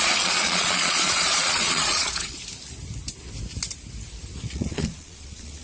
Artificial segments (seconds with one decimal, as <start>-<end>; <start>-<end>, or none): 0.0-2.4; 4.5-5.6